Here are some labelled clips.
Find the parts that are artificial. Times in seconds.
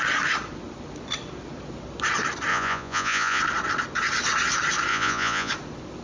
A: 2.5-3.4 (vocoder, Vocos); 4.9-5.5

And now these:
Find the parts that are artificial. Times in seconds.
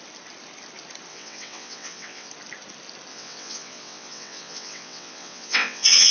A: 1.1-2.3 (vocoder, WaveNeXt); 3.1-6.1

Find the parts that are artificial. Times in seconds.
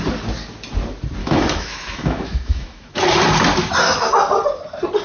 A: 1.2-3.0 (autoencoder, DAC-VAE)